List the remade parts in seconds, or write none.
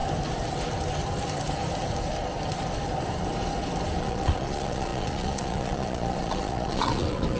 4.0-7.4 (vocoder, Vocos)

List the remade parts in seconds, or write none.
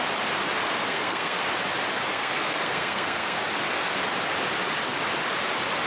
0.9-1.4 (codec, SNAC); 2.1-3.4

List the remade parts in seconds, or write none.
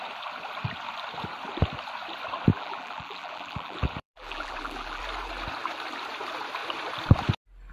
2.5-5.0 (vocoder, BigVGAN v2)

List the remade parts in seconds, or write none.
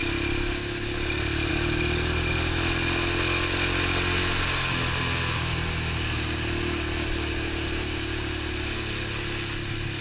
none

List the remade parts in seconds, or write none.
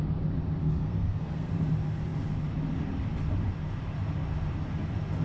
0.6-1.5 (codec, SNAC)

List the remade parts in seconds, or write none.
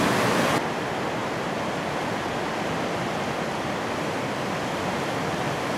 none